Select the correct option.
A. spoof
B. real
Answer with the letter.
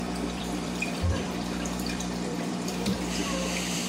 A